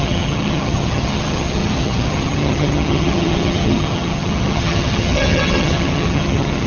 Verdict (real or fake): fake